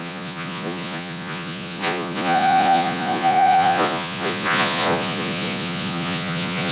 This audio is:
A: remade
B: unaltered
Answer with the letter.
A